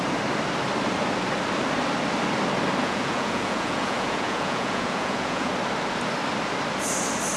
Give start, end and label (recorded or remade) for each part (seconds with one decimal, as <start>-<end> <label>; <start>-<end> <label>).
0.0-2.8 recorded; 2.8-5.5 remade; 5.5-7.4 recorded